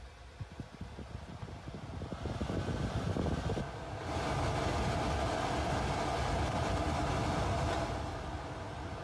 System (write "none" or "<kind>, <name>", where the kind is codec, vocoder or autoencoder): none